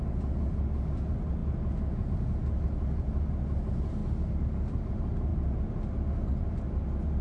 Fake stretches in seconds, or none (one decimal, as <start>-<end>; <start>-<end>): none